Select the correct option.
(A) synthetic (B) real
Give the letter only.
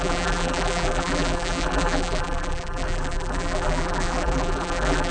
A